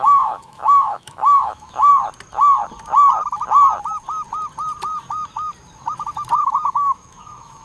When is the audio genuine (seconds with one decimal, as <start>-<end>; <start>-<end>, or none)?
1.9-6.4